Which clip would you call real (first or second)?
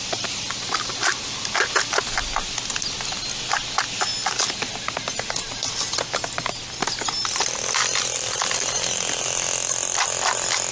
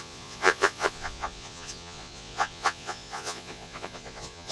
first